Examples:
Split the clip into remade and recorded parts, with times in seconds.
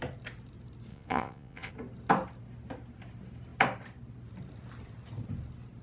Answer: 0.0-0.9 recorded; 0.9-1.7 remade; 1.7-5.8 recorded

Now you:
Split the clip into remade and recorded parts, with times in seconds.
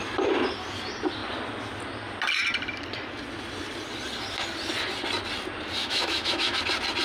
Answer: 0.0-5.8 recorded; 5.8-6.6 remade; 6.6-7.0 recorded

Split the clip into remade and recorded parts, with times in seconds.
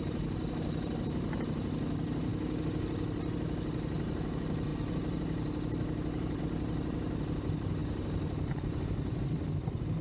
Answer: 0.0-2.3 remade; 2.3-2.8 recorded; 2.8-4.7 remade; 4.7-6.4 recorded; 6.4-10.0 remade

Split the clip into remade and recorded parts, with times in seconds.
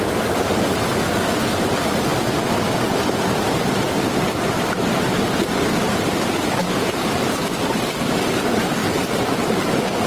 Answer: 0.0-8.8 recorded; 8.8-9.6 remade; 9.6-10.1 recorded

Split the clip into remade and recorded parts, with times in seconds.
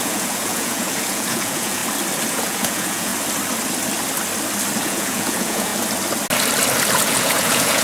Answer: 0.0-1.8 remade; 1.8-2.3 recorded; 2.3-3.1 remade; 3.1-4.8 recorded; 4.8-5.7 remade; 5.7-6.9 recorded; 6.9-7.8 remade